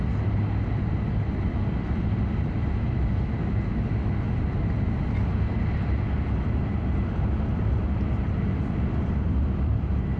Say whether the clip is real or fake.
real